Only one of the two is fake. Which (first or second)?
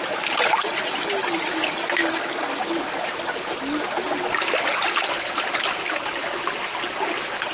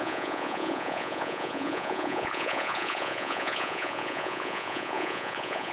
second